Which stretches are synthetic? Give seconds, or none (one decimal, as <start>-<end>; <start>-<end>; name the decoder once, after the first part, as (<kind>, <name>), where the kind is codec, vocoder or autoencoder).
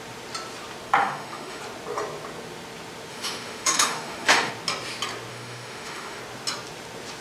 1.0-1.6 (autoencoder, DAC-VAE); 3.1-4.5; 5.3-6.2